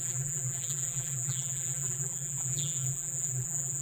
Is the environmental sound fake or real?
fake